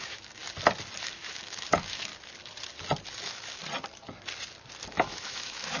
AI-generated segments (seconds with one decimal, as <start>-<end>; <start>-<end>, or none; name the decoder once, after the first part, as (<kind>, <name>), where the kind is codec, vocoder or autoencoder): 0.0-0.4 (autoencoder, DAC-VAE); 1.0-2.1; 3.2-3.6; 4.9-5.8